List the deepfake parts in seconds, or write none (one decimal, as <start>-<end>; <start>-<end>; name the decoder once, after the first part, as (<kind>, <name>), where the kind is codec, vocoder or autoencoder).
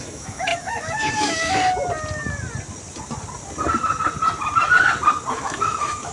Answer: 0.0-1.6 (autoencoder, DAC-VAE); 5.3-6.1